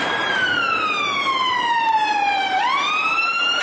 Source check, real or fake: fake